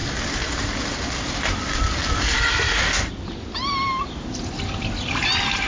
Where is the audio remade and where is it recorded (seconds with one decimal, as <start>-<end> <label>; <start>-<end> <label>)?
0.0-5.7 recorded